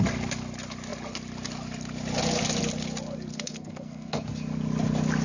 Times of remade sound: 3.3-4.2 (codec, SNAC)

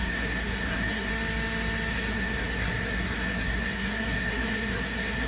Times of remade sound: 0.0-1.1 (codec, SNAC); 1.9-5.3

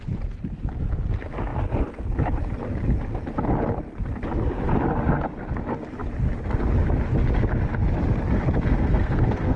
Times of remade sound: 8.7-9.6 (codec, SNAC)

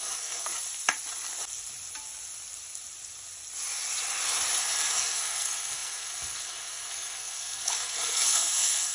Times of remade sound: 0.0-0.5 (codec, SNAC); 4.6-8.9

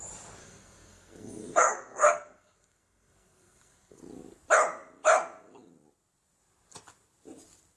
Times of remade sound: 0.4-4.0 (codec, SNAC)

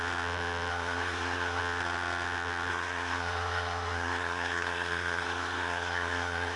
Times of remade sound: 0.7-1.6 (codec, SNAC); 2.7-6.6